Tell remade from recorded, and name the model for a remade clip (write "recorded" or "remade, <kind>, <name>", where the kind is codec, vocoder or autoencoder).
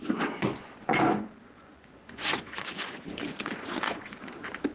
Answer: remade, vocoder, Vocos